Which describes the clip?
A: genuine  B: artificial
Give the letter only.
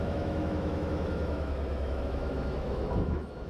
B